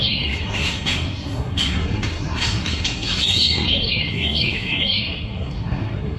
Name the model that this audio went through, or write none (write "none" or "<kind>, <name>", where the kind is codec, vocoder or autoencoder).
codec, SNAC